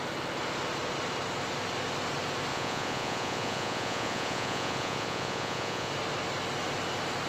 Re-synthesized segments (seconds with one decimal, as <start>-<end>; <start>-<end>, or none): 2.5-5.9

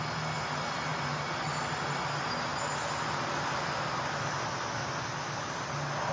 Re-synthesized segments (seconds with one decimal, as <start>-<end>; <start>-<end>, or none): none